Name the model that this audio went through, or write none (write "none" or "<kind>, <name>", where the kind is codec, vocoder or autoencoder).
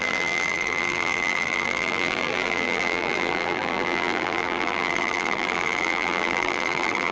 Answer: vocoder, BigVGAN v2